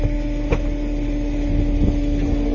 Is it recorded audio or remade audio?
recorded